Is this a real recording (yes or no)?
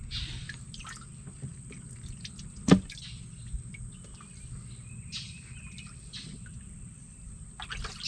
yes